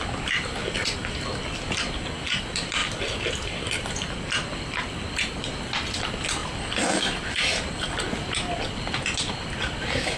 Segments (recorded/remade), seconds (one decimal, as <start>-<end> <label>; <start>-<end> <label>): 0.0-10.2 recorded